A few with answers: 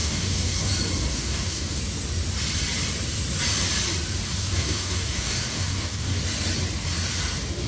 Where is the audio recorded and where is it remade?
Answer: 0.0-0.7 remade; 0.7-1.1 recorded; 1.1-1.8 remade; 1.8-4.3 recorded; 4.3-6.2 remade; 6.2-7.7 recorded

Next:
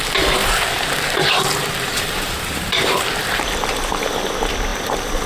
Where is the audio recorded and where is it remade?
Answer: 0.0-0.4 recorded; 0.4-3.4 remade; 3.4-5.3 recorded

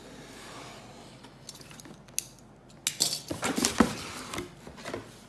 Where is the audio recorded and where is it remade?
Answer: 0.0-5.3 recorded